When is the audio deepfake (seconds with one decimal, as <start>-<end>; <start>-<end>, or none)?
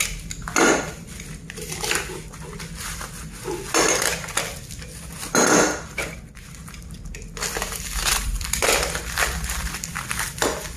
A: 8.1-9.9